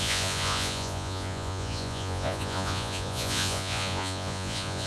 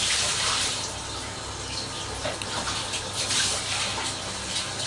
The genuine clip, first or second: second